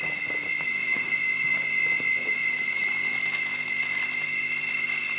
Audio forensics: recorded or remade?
recorded